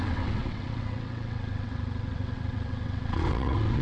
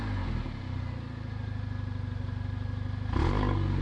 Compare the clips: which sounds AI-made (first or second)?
first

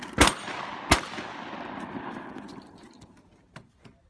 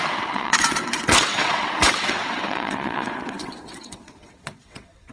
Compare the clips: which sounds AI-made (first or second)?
second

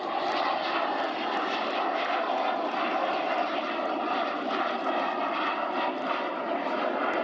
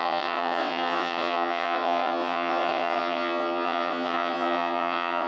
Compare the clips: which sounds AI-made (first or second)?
second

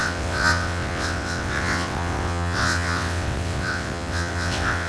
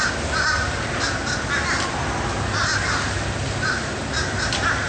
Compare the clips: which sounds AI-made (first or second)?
first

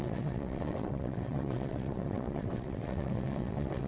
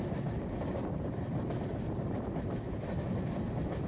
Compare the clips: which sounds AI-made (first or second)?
first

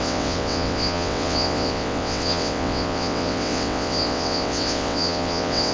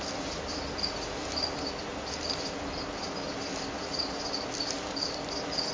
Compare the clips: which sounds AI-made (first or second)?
first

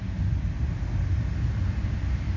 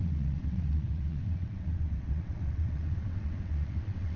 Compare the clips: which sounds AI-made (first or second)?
second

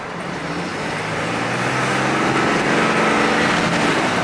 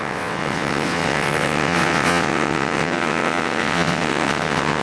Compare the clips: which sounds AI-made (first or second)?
second